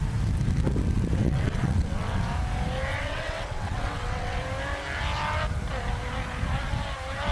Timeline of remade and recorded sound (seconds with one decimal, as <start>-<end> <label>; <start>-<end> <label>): 0.0-1.2 recorded; 1.2-2.2 remade; 2.2-2.9 recorded; 2.9-4.4 remade; 4.4-7.3 recorded